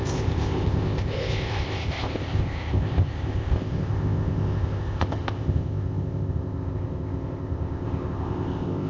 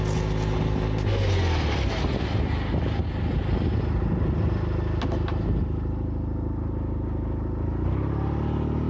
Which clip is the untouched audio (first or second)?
second